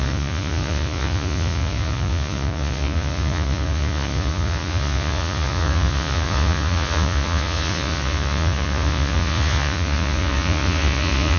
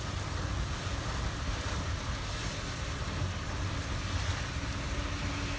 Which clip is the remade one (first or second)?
first